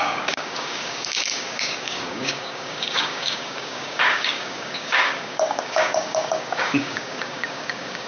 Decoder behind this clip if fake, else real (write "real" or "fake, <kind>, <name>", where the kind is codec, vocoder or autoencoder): fake, codec, DAC